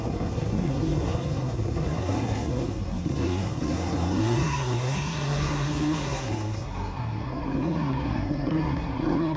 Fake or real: fake